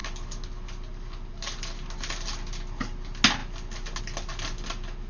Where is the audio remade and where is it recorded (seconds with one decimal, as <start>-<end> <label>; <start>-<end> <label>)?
0.0-5.1 recorded